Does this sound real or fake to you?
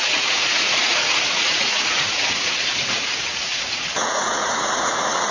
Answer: fake